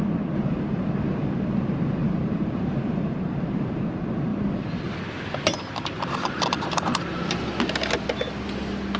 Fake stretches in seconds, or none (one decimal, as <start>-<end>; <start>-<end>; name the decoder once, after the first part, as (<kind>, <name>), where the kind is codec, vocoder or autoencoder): 2.0-3.9 (vocoder, BigVGAN v2)